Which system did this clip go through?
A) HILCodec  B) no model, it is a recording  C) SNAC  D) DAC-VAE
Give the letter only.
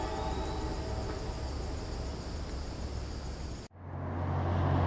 B